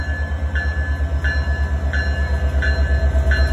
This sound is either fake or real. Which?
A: real